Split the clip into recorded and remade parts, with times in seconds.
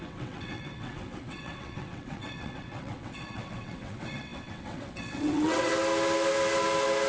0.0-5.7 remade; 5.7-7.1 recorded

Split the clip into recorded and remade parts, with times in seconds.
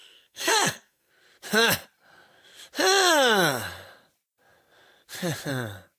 0.0-1.1 remade; 1.1-6.0 recorded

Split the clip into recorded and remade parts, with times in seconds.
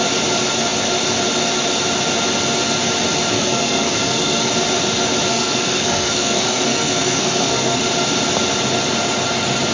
0.0-3.3 recorded; 3.3-4.5 remade; 4.5-5.3 recorded; 5.3-7.8 remade; 7.8-9.7 recorded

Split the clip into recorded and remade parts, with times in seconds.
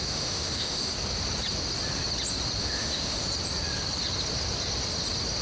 0.0-0.9 remade; 0.9-2.6 recorded; 2.6-3.2 remade; 3.2-5.4 recorded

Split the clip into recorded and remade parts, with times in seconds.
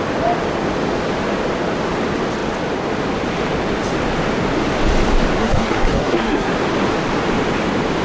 0.0-5.4 recorded; 5.4-6.5 remade; 6.5-8.0 recorded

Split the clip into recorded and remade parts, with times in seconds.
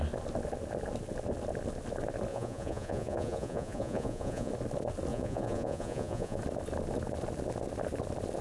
0.0-2.3 recorded; 2.3-4.5 remade; 4.5-5.1 recorded; 5.1-6.4 remade; 6.4-8.4 recorded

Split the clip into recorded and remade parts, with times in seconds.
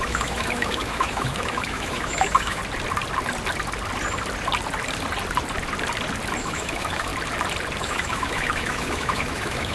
0.0-2.6 remade; 2.6-6.4 recorded; 6.4-7.1 remade; 7.1-7.8 recorded; 7.8-9.7 remade